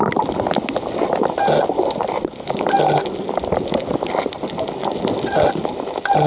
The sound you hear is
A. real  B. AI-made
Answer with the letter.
A